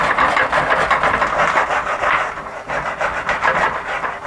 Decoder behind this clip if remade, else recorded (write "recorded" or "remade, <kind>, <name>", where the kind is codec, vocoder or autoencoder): recorded